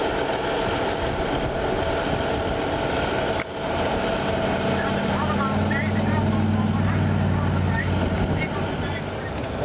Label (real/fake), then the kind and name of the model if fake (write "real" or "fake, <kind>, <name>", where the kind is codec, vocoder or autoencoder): real